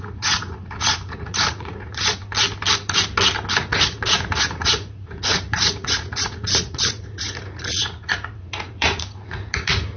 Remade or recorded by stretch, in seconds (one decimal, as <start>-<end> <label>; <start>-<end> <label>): 0.0-2.2 remade; 2.2-3.5 recorded; 3.5-10.0 remade